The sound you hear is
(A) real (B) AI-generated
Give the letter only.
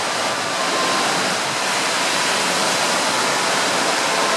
A